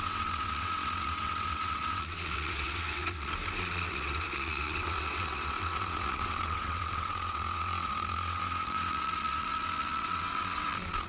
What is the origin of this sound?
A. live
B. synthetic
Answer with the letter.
B